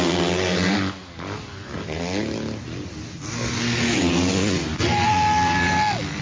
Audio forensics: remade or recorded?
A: recorded